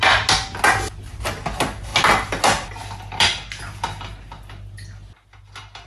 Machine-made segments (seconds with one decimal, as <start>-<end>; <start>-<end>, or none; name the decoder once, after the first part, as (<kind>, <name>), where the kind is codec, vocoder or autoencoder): none